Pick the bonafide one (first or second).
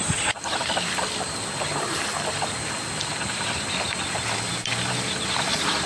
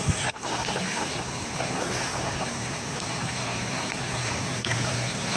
first